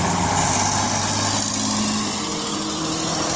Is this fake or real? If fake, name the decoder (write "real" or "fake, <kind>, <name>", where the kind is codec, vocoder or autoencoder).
real